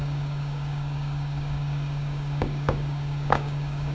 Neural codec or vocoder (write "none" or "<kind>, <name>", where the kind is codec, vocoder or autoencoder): codec, DAC